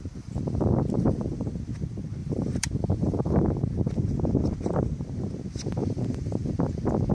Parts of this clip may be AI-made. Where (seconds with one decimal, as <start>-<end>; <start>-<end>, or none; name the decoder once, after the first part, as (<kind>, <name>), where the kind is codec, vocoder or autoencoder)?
2.2-3.4 (vocoder, BigVGAN v2); 5.8-6.5